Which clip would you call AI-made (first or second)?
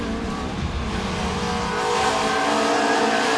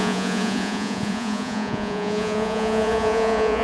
second